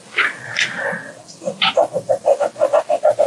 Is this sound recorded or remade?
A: recorded